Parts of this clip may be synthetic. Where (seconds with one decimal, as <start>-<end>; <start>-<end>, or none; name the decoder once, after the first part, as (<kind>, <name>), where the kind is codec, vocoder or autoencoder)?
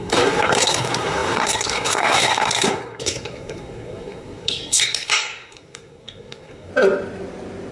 0.0-6.7 (codec, SNAC)